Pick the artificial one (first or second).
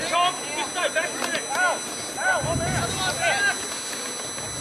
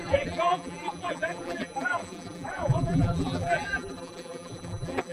second